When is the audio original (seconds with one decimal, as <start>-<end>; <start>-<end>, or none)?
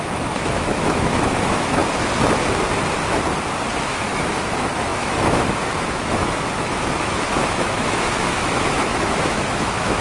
1.8-3.9